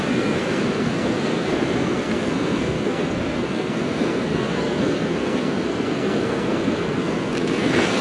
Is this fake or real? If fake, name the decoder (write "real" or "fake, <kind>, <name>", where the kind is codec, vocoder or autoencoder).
fake, codec, SNAC